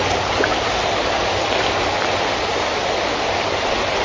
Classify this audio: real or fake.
real